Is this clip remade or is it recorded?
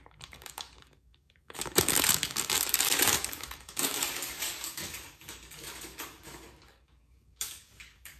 remade